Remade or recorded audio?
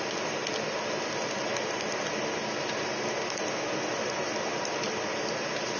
recorded